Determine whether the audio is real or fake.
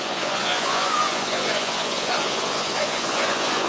fake